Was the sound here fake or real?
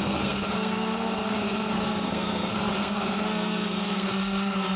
fake